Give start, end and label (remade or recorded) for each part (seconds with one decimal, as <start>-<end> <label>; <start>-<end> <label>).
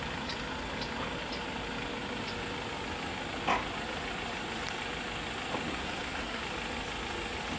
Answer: 0.0-5.7 recorded; 5.7-6.4 remade; 6.4-7.6 recorded